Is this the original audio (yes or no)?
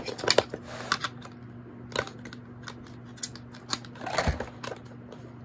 yes